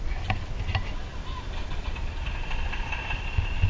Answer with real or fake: fake